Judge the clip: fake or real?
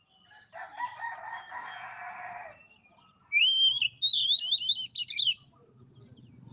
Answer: real